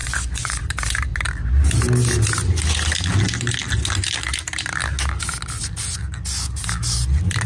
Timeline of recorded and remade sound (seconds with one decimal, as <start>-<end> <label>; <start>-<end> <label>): 0.0-0.6 remade; 0.6-7.5 recorded